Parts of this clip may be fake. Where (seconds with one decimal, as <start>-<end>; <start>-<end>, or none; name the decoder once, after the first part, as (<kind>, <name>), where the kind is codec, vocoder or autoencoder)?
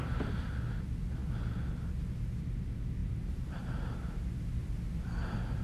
3.0-3.7 (vocoder, BigVGAN v2)